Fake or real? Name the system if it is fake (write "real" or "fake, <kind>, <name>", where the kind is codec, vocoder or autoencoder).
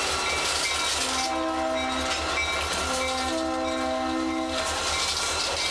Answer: real